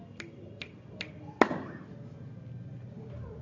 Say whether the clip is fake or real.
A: real